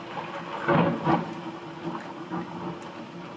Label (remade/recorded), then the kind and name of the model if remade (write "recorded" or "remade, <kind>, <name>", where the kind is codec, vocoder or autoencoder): recorded